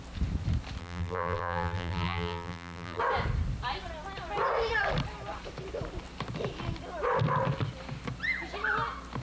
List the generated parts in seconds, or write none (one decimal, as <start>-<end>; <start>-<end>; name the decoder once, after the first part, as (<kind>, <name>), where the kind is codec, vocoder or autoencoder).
0.8-3.0 (vocoder, BigVGAN v2)